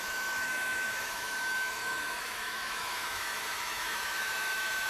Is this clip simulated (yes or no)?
yes